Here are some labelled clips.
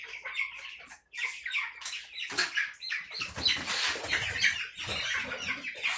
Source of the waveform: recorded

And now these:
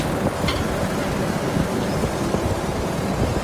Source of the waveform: recorded